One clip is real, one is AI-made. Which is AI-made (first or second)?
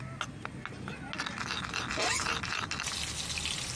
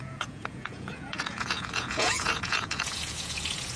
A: second